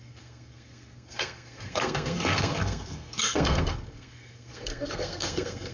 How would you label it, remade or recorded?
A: remade